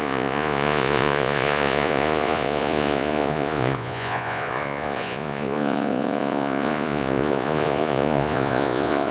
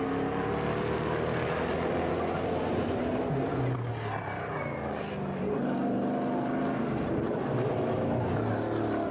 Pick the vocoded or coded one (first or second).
first